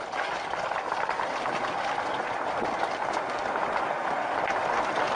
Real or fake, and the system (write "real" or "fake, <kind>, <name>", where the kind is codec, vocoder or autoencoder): real